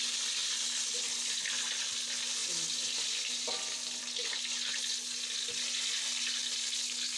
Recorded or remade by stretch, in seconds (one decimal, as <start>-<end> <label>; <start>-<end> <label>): 0.0-7.2 recorded